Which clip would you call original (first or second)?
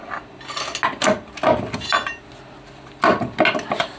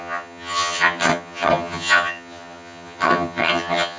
first